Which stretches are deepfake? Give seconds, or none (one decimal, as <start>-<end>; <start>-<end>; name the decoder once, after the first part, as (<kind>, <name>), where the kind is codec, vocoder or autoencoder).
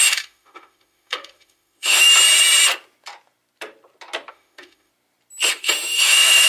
0.0-2.1 (autoencoder, DAC-VAE); 4.3-4.9; 5.5-6.5